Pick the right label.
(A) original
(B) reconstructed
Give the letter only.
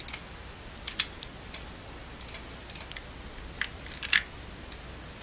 A